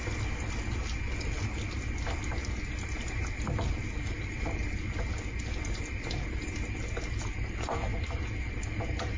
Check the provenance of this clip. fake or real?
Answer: real